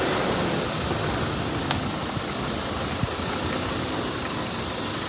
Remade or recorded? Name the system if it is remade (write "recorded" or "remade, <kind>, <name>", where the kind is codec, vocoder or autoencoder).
recorded